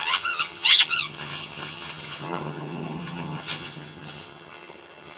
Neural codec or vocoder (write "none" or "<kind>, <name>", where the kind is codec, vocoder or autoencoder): vocoder, HiFi-GAN